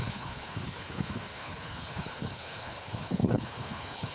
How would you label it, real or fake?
fake